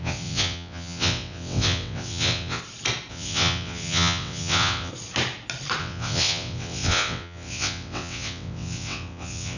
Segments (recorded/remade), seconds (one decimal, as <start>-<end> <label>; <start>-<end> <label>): 0.0-2.6 remade; 2.6-3.1 recorded; 3.1-4.9 remade; 4.9-5.8 recorded; 5.8-9.6 remade